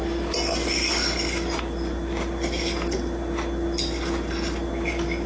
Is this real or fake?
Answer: real